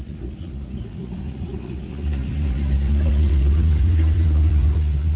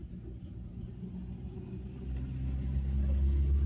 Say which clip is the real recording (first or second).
second